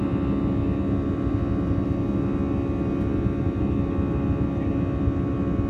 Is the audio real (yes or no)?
yes